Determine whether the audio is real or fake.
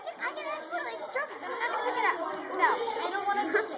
real